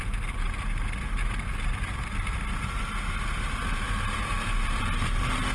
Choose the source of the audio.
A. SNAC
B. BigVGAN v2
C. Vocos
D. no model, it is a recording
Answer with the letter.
D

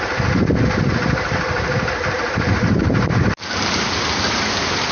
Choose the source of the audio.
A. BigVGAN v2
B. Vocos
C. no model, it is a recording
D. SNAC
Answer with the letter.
A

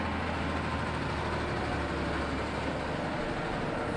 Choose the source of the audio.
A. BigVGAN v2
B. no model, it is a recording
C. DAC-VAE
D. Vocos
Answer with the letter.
B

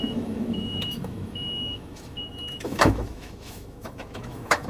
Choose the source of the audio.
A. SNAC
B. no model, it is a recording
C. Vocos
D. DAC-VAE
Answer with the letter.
D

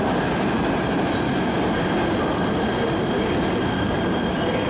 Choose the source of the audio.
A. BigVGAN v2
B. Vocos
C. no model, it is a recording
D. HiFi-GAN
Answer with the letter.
C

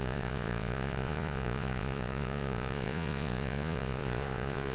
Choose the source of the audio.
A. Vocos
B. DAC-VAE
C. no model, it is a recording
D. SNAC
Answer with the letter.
A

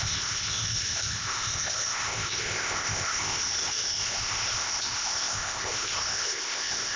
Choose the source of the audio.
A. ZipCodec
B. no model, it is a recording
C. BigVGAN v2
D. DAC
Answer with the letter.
A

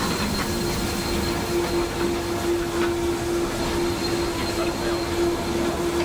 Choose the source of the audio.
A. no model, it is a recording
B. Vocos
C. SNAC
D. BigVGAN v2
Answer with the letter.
A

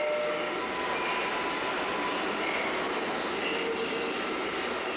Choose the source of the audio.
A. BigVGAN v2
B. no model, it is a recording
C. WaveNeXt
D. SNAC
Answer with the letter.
B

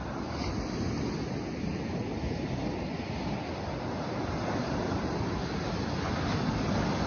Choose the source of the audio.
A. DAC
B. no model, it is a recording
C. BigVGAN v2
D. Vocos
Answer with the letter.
B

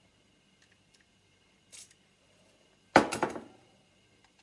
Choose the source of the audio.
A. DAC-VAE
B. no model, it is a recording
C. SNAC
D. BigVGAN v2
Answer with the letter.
D